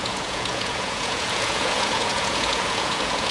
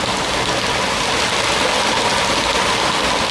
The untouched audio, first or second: second